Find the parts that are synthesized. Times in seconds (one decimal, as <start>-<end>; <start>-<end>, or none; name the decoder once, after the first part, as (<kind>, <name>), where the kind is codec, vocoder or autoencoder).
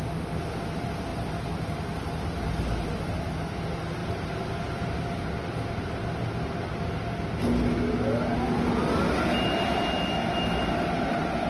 1.1-1.9 (vocoder, BigVGAN v2); 4.0-6.0